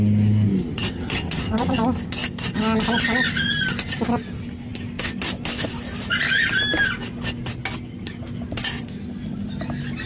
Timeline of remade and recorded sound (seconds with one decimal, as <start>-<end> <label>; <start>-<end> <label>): 0.0-0.7 recorded; 0.7-1.8 remade; 1.8-10.1 recorded